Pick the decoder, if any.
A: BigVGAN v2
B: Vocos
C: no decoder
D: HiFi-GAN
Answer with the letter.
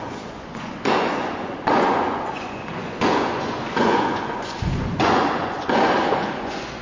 B